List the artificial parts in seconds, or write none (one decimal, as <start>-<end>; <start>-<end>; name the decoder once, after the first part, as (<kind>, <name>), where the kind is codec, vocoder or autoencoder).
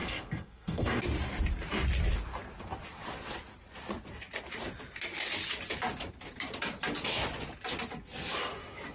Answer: 0.0-1.0 (codec, SNAC)